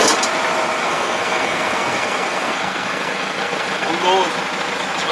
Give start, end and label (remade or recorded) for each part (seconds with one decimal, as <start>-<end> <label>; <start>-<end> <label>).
0.0-0.8 recorded; 0.8-3.9 remade; 3.9-5.1 recorded